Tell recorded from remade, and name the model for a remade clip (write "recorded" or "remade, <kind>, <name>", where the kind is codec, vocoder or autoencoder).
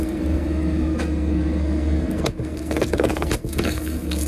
remade, codec, SNAC